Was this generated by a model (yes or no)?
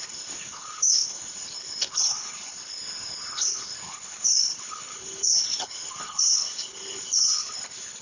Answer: yes